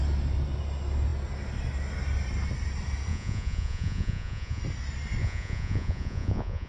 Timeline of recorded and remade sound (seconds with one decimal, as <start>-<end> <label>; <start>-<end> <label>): 0.0-3.1 recorded; 3.1-4.6 remade; 4.6-5.2 recorded; 5.2-6.7 remade